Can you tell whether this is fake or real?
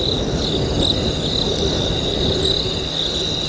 real